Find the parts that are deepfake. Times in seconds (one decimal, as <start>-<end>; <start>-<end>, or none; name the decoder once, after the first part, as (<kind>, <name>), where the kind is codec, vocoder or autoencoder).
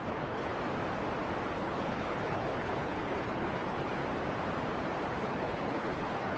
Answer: 0.0-0.5 (codec, HILCodec); 1.5-4.0; 5.2-6.4